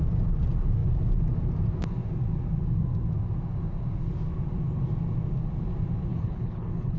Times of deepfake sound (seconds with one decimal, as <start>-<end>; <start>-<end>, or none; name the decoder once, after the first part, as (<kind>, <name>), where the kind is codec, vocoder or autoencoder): 6.1-7.0 (codec, HILCodec)